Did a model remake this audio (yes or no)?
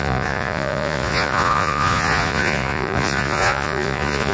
yes